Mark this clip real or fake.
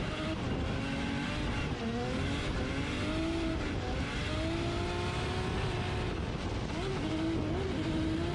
real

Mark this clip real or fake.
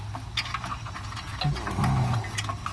real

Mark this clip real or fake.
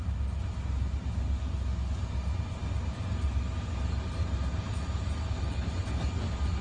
real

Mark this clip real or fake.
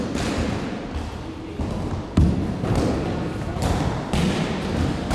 real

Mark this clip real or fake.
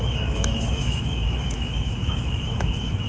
fake